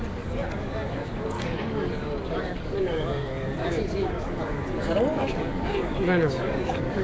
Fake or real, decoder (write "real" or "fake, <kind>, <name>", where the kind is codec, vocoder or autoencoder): fake, codec, DAC